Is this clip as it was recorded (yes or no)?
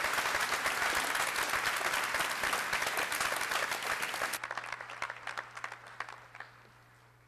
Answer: yes